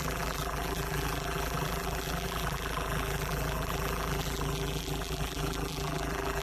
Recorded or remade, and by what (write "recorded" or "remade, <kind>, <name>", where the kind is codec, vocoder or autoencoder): remade, vocoder, BigVGAN v2